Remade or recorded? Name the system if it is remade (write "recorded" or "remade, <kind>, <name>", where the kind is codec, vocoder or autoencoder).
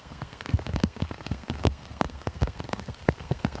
remade, codec, SNAC